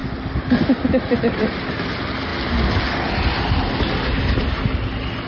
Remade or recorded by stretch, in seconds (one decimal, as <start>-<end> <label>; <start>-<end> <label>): 0.0-1.6 remade; 1.6-5.3 recorded